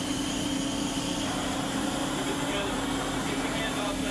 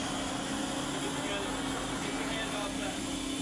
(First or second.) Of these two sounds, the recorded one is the second